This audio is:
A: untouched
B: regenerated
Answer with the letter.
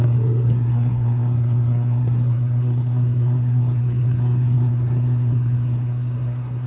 B